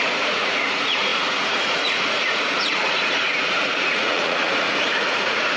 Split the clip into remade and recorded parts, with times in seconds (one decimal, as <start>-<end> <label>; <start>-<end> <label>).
0.0-5.6 remade